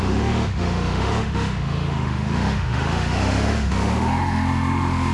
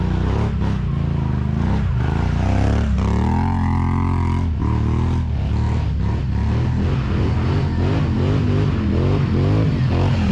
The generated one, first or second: first